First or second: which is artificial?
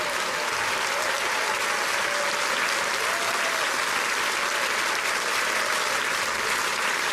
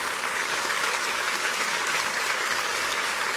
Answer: second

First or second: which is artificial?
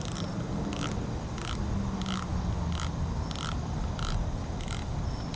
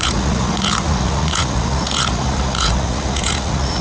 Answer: second